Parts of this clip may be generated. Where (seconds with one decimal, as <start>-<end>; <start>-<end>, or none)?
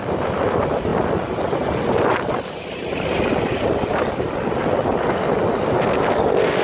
none